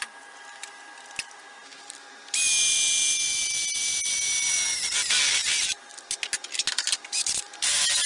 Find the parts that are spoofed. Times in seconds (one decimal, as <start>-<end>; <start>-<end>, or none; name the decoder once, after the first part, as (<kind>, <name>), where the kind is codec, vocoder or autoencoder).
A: none